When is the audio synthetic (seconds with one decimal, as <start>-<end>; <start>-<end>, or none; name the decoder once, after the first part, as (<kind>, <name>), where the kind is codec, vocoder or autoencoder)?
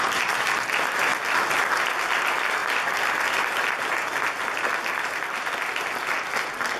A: none